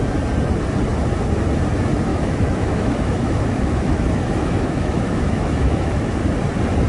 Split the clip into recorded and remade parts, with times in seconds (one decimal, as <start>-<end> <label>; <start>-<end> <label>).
0.0-2.1 recorded; 2.1-6.2 remade; 6.2-6.9 recorded